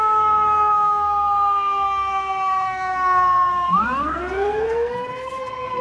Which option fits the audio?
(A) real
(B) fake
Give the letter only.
B